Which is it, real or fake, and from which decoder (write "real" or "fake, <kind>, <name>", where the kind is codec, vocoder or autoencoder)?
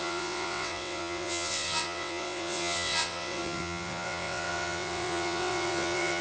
fake, vocoder, WaveNeXt